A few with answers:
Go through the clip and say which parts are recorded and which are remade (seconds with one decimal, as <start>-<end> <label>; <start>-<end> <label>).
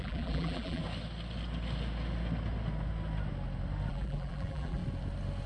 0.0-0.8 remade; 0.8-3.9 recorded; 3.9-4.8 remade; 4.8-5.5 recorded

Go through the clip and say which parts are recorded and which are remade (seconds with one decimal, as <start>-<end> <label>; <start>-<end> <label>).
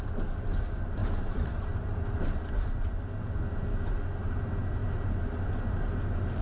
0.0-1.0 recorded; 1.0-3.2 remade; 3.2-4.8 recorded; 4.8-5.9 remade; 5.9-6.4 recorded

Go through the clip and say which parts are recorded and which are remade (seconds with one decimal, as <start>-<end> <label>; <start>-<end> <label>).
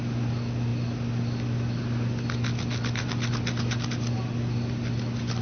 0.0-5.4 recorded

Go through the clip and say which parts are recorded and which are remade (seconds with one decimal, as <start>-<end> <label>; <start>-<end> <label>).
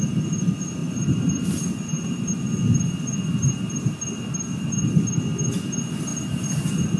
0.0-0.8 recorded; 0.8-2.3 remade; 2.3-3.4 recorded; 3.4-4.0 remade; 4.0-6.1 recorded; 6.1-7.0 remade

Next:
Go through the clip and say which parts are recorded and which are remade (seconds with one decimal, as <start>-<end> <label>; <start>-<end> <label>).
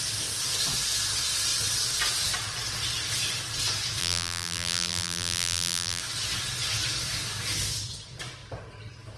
0.0-4.0 recorded; 4.0-6.0 remade; 6.0-9.2 recorded